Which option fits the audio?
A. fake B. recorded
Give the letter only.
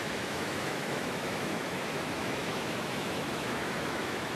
A